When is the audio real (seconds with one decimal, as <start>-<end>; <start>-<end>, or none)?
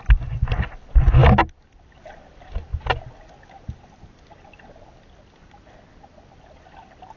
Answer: 0.0-7.2